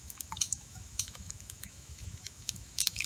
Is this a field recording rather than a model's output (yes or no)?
no